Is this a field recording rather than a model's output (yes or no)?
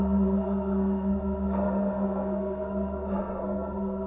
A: no